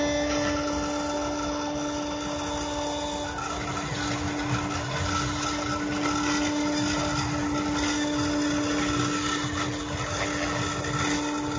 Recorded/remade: recorded